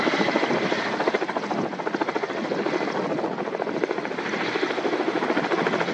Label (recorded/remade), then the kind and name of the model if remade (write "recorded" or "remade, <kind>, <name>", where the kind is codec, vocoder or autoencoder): recorded